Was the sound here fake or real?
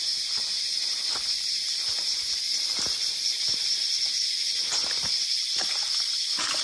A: fake